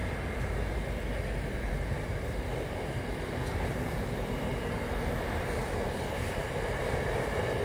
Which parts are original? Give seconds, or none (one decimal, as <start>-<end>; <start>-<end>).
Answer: none